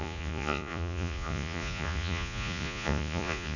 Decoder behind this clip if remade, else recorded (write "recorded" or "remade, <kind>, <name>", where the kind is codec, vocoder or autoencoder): remade, vocoder, Vocos